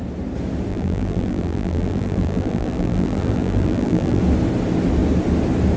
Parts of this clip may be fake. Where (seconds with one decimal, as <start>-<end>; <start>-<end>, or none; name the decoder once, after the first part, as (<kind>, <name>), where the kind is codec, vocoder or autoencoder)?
0.7-4.2 (vocoder, BigVGAN v2)